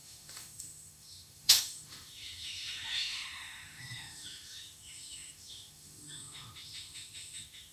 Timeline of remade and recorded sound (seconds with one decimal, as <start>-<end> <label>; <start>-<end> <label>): 0.0-7.7 remade